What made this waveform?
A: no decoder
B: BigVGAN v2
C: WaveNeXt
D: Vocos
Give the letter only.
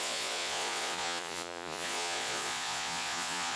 D